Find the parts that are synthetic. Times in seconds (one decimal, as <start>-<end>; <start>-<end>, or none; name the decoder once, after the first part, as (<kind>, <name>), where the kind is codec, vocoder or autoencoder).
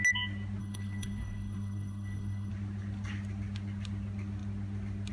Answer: 0.6-2.5 (codec, SNAC)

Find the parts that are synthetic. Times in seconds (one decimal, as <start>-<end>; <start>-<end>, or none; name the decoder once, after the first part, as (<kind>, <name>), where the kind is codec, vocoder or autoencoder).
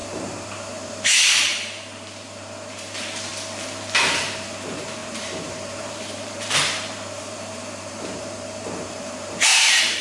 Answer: 0.0-3.3 (vocoder, BigVGAN v2); 4.1-10.0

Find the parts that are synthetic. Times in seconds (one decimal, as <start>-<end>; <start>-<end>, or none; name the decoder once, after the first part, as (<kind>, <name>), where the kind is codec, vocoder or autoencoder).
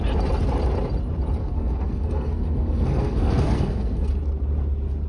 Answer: 1.4-4.1 (codec, SNAC)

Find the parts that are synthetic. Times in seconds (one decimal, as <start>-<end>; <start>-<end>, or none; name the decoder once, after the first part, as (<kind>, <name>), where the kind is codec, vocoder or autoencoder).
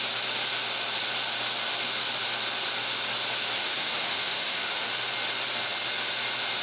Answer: 3.6-4.8 (autoencoder, DAC-VAE)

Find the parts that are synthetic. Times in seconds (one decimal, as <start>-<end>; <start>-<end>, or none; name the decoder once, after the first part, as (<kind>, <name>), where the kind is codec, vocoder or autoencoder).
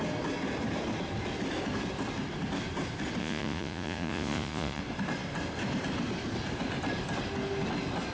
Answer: 3.2-4.8 (vocoder, Vocos)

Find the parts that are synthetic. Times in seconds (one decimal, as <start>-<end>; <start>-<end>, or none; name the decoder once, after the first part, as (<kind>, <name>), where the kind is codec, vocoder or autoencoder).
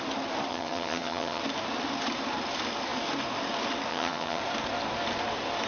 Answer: 0.5-1.4 (vocoder, HiFi-GAN); 3.9-4.4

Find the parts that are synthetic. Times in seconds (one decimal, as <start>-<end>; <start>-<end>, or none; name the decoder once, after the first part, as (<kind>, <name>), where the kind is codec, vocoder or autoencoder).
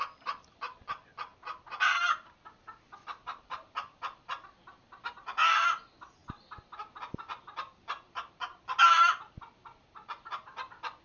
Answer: none